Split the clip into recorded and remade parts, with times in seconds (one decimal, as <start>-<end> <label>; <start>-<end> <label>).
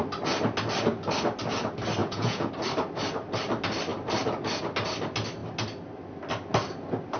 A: 0.0-2.0 recorded; 2.0-2.5 remade; 2.5-7.2 recorded